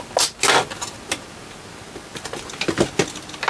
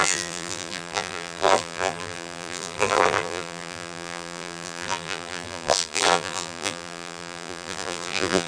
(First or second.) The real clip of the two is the first